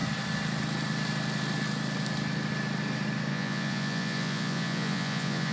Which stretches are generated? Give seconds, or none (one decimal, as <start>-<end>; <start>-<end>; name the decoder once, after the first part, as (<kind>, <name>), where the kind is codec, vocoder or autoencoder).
3.3-5.5 (vocoder, Vocos)